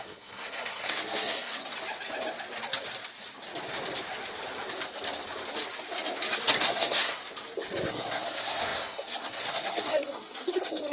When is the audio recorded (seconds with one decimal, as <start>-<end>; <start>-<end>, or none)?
1.5-6.6; 7.2-7.9